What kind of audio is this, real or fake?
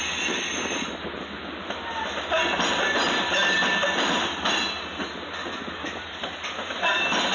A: real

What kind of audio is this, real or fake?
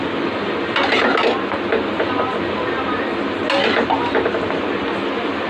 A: real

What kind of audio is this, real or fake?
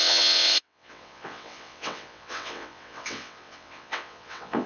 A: fake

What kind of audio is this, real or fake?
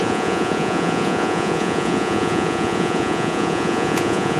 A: fake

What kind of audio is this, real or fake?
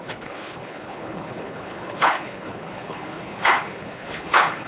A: fake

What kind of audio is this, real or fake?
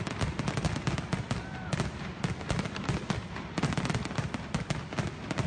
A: real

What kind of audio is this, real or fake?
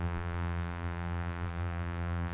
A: fake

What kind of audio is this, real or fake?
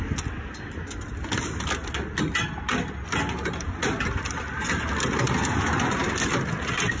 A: real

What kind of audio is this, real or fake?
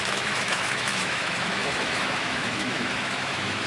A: fake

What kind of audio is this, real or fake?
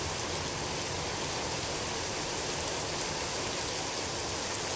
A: real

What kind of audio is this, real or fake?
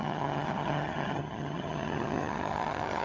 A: fake